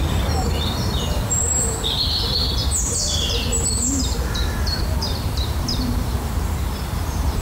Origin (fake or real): fake